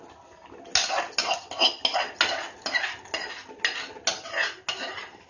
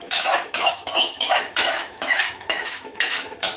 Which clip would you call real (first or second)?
first